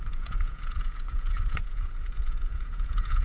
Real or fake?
fake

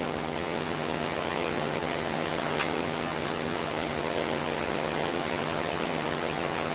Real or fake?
fake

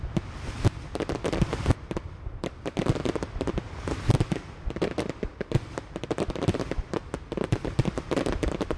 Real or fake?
real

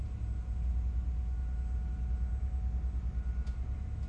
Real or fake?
real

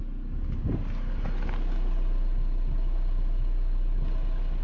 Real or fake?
real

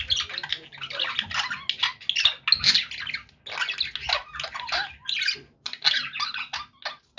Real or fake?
real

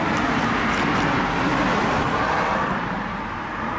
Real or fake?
real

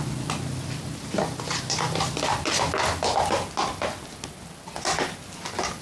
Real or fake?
real